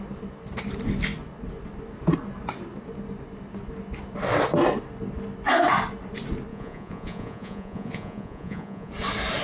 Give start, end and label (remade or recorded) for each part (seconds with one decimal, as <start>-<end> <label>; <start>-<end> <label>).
0.0-6.5 recorded; 6.5-8.9 remade; 8.9-9.4 recorded